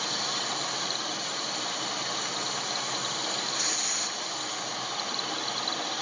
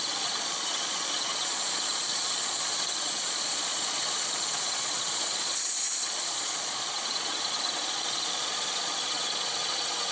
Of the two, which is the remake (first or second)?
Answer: second